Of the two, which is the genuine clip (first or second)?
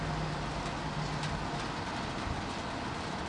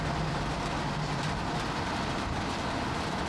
first